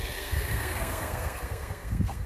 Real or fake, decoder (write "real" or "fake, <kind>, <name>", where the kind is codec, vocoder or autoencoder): fake, codec, SNAC